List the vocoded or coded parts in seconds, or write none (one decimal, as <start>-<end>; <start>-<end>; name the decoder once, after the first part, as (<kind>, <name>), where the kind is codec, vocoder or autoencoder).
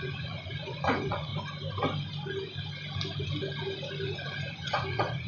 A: 0.0-1.3 (vocoder, Vocos); 4.5-5.3